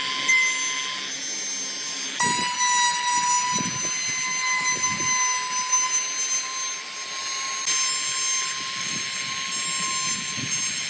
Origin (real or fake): real